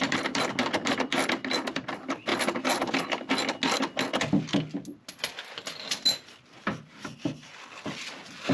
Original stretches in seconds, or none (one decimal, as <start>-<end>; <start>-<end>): 0.0-8.5